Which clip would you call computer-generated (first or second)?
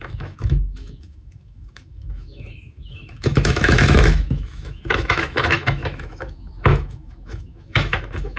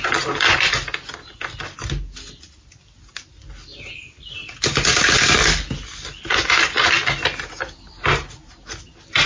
first